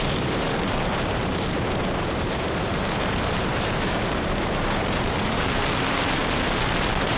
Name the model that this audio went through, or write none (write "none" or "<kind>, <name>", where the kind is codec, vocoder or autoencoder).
vocoder, BigVGAN v2